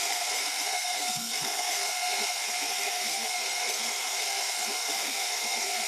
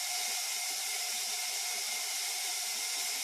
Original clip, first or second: second